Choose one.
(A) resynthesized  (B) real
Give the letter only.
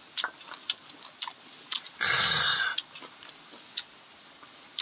B